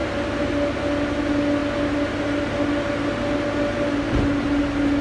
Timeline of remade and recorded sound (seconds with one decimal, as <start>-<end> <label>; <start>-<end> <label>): 0.0-5.0 recorded